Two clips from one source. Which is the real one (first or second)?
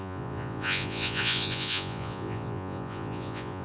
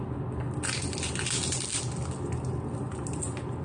second